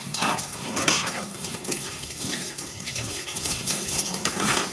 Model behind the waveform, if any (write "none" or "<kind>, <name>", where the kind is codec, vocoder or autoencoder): codec, SNAC